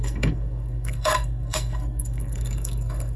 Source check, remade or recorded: remade